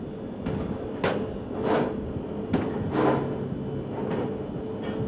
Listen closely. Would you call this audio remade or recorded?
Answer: recorded